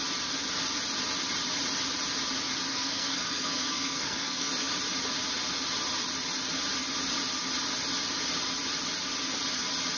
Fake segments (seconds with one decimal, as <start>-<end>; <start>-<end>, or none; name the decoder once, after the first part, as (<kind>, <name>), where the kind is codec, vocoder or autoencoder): 2.7-4.5 (codec, SNAC)